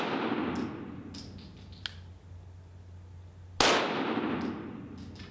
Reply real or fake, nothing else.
real